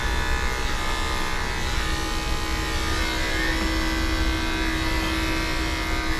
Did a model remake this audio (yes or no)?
no